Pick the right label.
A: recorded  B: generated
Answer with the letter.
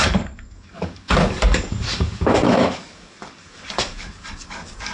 B